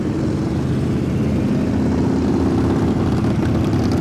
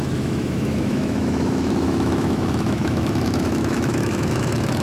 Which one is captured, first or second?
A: first